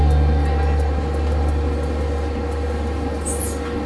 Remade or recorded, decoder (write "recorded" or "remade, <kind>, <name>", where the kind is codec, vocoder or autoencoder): recorded